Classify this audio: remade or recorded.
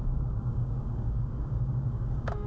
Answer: remade